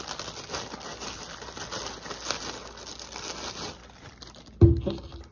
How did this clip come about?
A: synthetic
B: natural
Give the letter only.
B